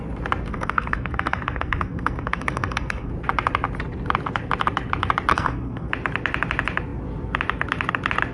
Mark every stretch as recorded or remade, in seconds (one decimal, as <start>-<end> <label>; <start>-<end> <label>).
0.0-0.5 recorded; 0.5-3.1 remade; 3.1-5.3 recorded; 5.3-5.9 remade; 5.9-8.3 recorded